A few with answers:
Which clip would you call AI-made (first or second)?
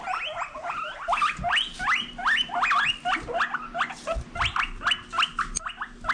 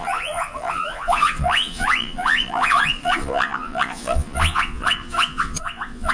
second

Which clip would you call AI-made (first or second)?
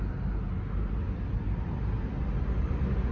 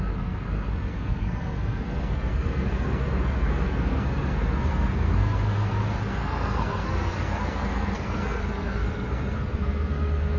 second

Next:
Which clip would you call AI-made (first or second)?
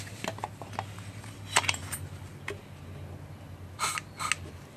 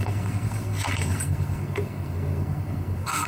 second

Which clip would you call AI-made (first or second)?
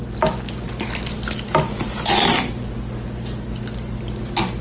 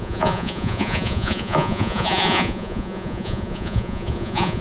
second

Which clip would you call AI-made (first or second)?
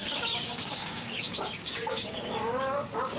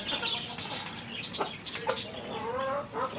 first